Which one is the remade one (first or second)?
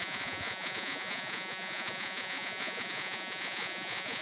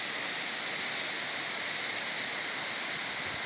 first